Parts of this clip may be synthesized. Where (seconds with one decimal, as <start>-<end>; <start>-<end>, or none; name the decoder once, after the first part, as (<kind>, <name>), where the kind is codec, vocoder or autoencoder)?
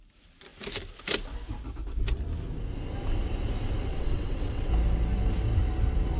3.9-4.7 (vocoder, WaveNeXt)